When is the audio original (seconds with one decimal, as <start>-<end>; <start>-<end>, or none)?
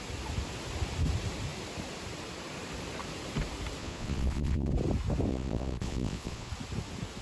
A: 0.0-3.8; 4.7-5.3; 6.5-7.2